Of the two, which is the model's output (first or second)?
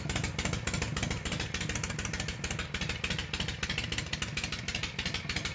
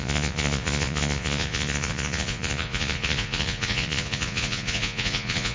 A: second